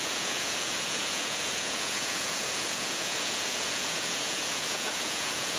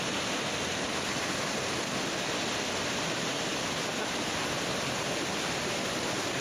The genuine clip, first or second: second